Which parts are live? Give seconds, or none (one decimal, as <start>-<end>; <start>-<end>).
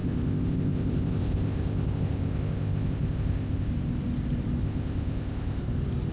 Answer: 3.7-4.6; 5.6-6.1